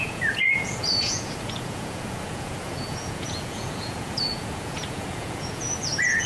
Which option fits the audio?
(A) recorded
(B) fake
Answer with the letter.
B